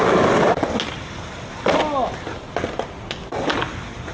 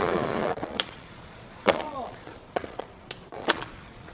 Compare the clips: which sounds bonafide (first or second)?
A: first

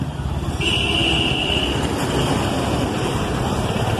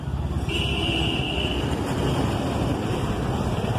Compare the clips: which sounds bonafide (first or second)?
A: second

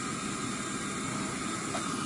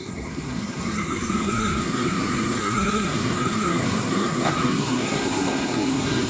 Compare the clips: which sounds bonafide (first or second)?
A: first